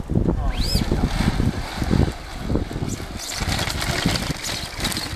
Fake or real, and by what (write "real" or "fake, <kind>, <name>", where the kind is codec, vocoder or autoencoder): real